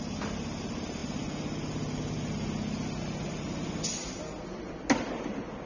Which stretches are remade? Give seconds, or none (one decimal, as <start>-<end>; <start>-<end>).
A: none

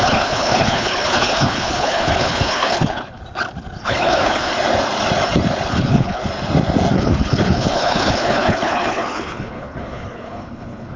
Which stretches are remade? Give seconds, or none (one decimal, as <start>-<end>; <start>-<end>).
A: 0.0-3.2; 3.8-4.5; 5.7-6.2; 6.9-11.0